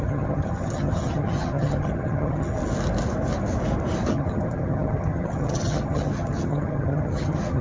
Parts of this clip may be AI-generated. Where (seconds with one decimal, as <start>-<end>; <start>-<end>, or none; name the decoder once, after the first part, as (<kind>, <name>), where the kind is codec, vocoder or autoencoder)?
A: 0.0-2.6 (vocoder, HiFi-GAN); 4.1-7.6